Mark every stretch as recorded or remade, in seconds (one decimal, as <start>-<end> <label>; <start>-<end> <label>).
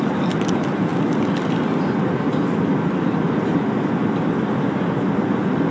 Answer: 0.0-5.7 recorded